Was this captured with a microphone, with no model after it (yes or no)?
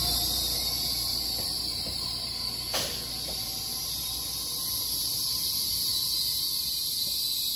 yes